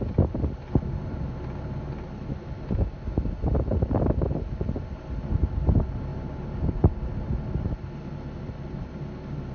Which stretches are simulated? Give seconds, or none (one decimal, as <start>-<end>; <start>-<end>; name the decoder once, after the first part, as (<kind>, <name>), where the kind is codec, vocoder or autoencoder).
none